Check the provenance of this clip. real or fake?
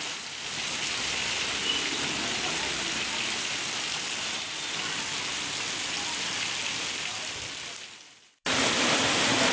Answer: real